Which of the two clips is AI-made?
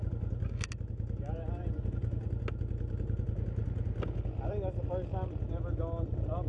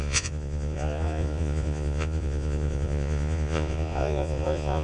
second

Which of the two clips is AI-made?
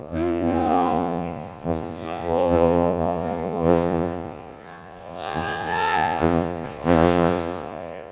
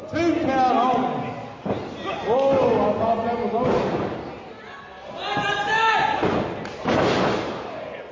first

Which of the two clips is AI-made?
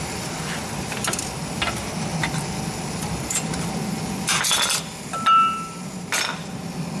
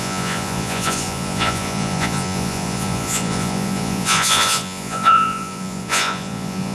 second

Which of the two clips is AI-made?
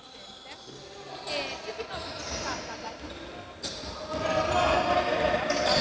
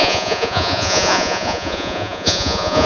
second